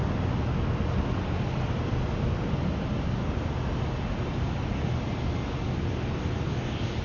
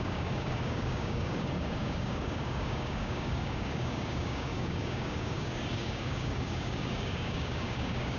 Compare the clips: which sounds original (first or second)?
first